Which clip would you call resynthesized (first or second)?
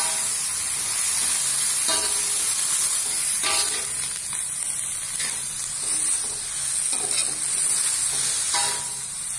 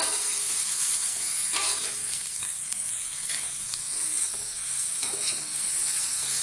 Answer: second